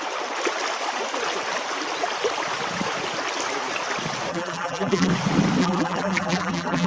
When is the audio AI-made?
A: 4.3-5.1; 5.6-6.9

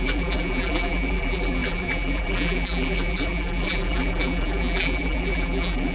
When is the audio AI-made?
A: 0.0-5.9

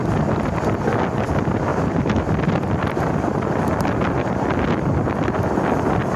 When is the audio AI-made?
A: 1.7-5.4

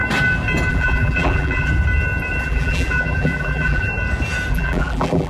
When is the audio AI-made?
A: 0.7-1.7; 2.4-3.9; 4.5-5.3